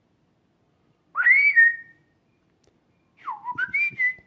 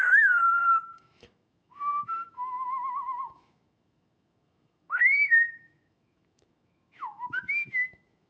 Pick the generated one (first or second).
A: second